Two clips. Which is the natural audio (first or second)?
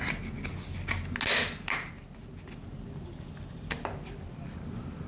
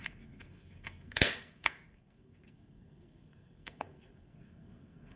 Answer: first